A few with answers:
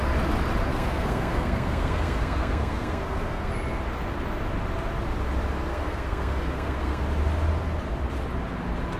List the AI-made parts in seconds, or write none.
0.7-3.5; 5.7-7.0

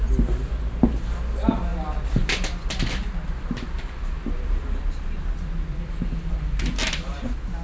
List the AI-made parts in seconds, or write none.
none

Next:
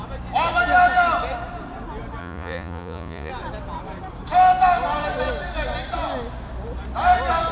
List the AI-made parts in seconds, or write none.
2.2-3.3